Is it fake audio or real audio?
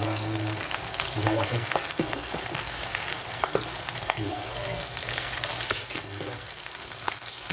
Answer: fake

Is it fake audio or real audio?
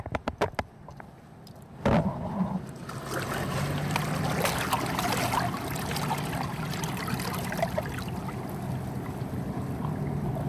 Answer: real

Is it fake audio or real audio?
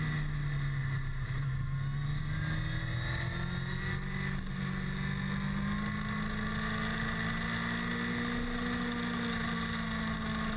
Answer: real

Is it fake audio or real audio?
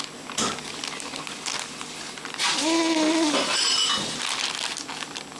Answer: real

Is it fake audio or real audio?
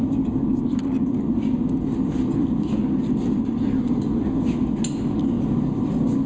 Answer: real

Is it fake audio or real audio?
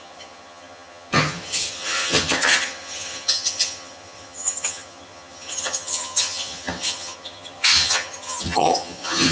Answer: fake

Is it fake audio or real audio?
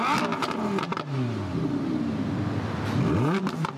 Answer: real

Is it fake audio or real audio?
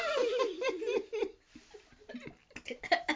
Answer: fake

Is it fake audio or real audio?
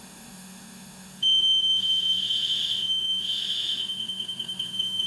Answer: fake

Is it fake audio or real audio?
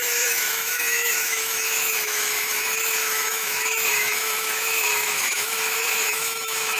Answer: fake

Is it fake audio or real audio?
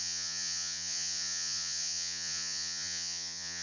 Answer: fake